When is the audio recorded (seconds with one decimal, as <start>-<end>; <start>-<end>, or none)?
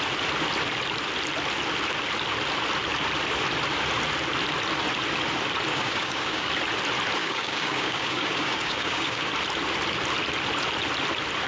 0.0-5.7; 6.5-7.2; 9.3-11.5